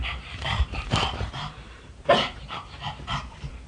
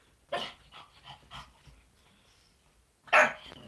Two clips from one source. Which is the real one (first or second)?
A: second